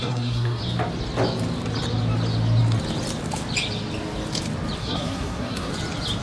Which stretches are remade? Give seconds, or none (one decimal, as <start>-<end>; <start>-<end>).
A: 0.0-0.6; 4.8-5.7